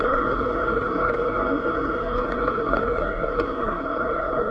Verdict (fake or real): fake